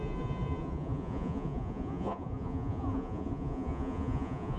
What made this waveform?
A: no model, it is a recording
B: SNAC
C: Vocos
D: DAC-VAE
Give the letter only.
C